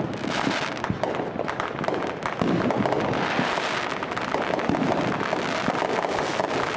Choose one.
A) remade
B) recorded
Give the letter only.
B